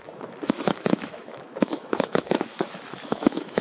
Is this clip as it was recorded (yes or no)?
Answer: no